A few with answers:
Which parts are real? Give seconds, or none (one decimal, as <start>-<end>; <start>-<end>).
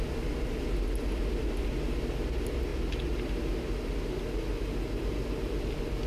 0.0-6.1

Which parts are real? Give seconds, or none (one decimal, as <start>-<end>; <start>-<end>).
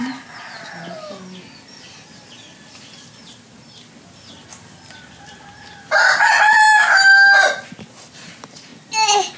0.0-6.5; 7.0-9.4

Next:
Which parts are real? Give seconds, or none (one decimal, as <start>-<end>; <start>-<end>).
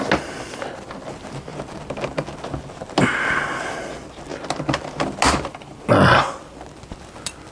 0.0-7.5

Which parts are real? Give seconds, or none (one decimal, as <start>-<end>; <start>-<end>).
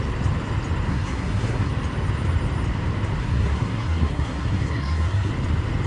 0.0-0.9; 1.7-3.2; 5.3-5.9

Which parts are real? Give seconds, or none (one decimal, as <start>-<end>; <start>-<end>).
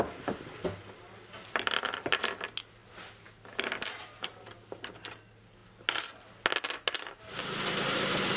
0.0-8.4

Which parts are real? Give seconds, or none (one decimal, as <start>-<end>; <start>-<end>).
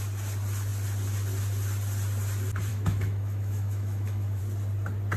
0.0-2.7; 4.4-5.2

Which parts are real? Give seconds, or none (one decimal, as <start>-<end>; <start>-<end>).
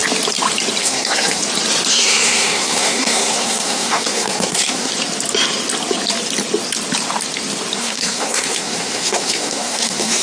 0.0-0.8; 1.4-1.9; 4.9-7.8